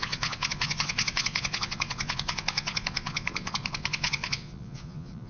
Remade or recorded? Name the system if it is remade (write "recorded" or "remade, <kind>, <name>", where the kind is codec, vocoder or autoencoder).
remade, vocoder, Vocos